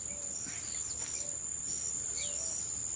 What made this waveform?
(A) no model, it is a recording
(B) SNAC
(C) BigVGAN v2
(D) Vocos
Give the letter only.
A